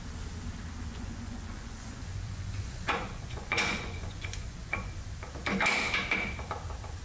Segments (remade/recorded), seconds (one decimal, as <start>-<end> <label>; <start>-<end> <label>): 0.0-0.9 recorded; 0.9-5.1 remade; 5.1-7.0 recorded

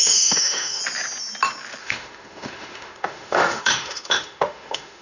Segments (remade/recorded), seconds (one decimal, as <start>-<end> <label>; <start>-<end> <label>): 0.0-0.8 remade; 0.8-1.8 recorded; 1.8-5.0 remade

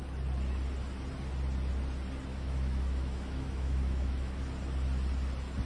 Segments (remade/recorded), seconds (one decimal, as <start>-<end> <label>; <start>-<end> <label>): 0.0-2.3 recorded; 2.3-4.4 remade; 4.4-5.7 recorded

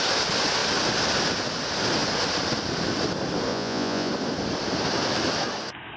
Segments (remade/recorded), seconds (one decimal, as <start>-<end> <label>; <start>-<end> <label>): 0.0-3.5 recorded; 3.5-4.1 remade; 4.1-6.0 recorded

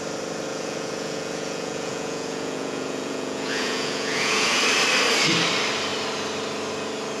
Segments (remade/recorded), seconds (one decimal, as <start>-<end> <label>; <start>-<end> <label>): 0.0-0.5 recorded; 0.5-4.6 remade; 4.6-7.2 recorded